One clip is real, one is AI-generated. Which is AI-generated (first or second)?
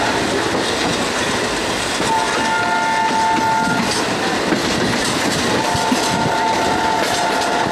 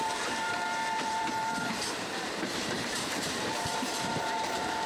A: second